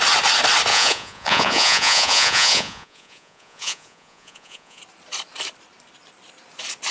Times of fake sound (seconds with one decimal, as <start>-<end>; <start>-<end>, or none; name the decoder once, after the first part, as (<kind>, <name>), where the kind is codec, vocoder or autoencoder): 0.7-4.8 (vocoder, Vocos)